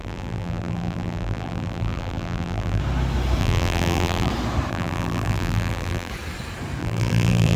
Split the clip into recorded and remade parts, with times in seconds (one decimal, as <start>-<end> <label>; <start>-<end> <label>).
0.0-2.8 remade; 2.8-3.4 recorded; 3.4-4.3 remade; 4.3-4.7 recorded; 4.7-6.1 remade; 6.1-6.8 recorded; 6.8-7.6 remade